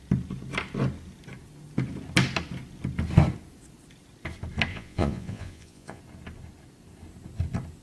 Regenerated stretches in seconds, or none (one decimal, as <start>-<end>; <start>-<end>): 4.7-6.0